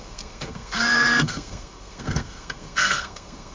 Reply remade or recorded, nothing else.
remade